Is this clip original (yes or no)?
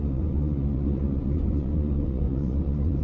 no